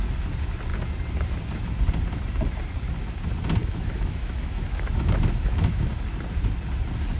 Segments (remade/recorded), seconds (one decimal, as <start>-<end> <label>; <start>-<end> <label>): 0.0-3.6 recorded; 3.6-5.9 remade; 5.9-7.2 recorded